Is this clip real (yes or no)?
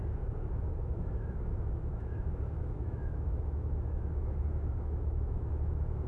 no